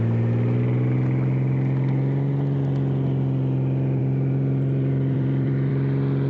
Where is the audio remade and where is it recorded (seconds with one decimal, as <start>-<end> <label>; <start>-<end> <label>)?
0.0-4.0 recorded; 4.0-5.7 remade; 5.7-6.3 recorded

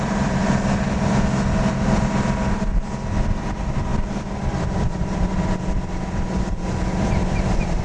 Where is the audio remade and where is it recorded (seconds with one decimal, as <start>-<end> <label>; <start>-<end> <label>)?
0.0-0.4 remade; 0.4-3.4 recorded; 3.4-7.8 remade

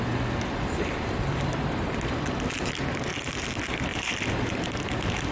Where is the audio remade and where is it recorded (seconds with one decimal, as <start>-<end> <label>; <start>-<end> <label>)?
0.0-3.9 recorded; 3.9-4.8 remade; 4.8-5.3 recorded